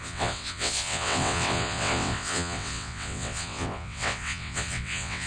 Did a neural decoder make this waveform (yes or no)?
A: yes